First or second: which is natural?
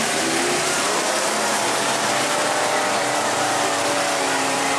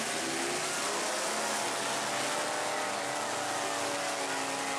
second